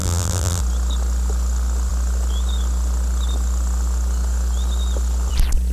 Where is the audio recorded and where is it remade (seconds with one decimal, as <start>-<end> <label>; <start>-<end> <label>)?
0.0-0.6 remade; 0.6-5.7 recorded

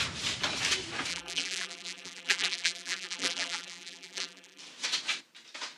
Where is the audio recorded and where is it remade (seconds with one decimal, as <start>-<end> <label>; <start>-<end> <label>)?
0.0-1.1 recorded; 1.1-4.6 remade; 4.6-5.8 recorded

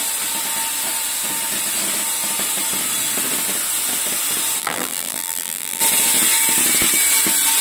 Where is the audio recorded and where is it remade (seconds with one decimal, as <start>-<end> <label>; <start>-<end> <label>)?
0.0-4.6 recorded; 4.6-5.8 remade; 5.8-7.6 recorded

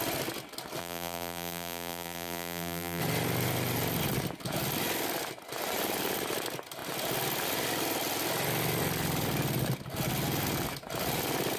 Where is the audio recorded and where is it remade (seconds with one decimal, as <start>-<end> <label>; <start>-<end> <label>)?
0.0-0.8 recorded; 0.8-3.0 remade; 3.0-11.6 recorded

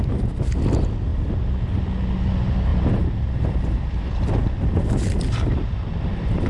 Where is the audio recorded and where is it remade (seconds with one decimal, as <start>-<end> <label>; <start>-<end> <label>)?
0.0-2.7 recorded; 2.7-4.4 remade; 4.4-6.5 recorded

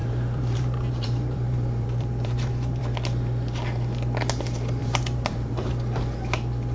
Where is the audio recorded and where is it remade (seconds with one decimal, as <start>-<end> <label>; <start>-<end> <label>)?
0.0-2.8 remade; 2.8-4.8 recorded; 4.8-5.7 remade; 5.7-6.7 recorded

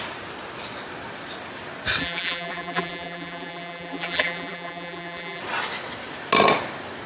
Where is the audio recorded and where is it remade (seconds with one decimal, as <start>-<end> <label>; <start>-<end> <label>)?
0.0-2.0 recorded; 2.0-5.4 remade; 5.4-7.1 recorded

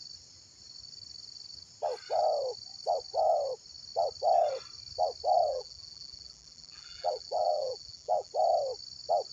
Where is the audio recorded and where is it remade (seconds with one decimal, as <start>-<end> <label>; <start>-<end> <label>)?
0.0-5.5 recorded; 5.5-8.3 remade; 8.3-9.3 recorded